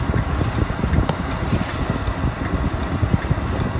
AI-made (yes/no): no